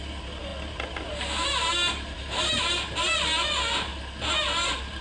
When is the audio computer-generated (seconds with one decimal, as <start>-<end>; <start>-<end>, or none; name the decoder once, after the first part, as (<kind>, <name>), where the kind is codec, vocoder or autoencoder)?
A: 1.7-2.7 (vocoder, BigVGAN v2)